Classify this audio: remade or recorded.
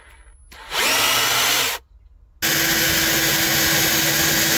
recorded